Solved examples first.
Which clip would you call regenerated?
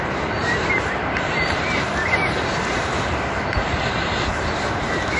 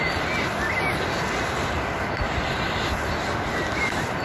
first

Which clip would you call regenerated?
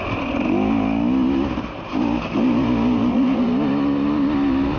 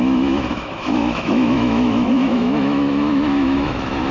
second